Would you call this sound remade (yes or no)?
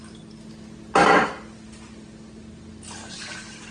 no